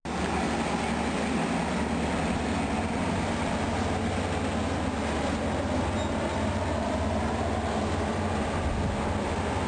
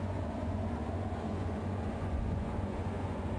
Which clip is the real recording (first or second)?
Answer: first